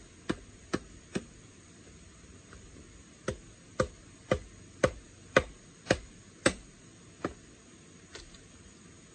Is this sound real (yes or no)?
yes